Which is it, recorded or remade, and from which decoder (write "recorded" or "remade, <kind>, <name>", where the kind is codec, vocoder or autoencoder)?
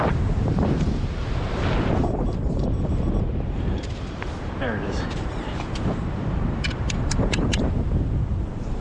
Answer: remade, vocoder, BigVGAN v2